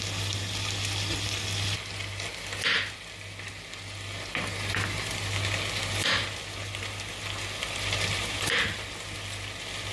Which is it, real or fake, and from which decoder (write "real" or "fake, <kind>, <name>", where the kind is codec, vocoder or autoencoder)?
real